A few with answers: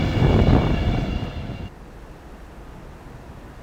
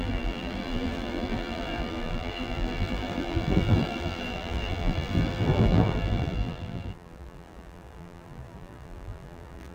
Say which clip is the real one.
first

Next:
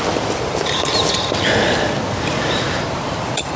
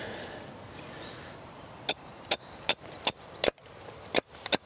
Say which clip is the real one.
second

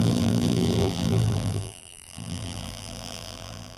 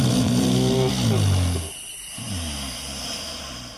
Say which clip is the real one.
second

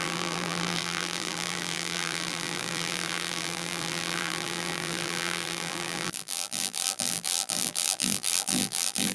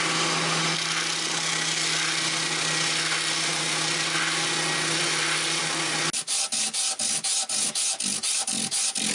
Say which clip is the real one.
second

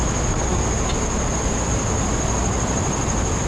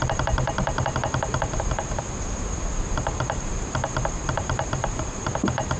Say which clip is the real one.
first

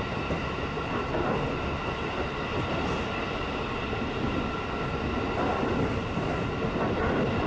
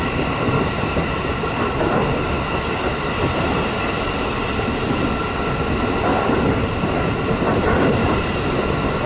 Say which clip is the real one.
first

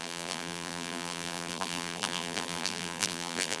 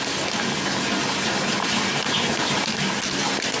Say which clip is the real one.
second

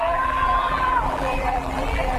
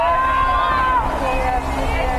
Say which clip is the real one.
second